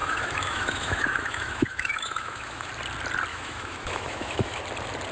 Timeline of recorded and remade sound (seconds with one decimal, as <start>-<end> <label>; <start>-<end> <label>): 0.0-2.7 remade; 2.7-3.3 recorded; 3.3-4.6 remade; 4.6-5.1 recorded